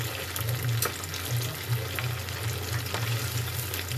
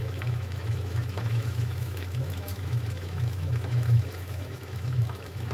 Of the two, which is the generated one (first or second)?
second